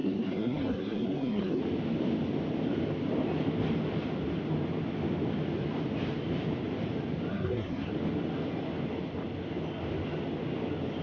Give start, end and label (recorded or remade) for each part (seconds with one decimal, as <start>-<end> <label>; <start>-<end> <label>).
0.0-1.6 remade; 1.6-7.3 recorded; 7.3-7.9 remade; 7.9-11.0 recorded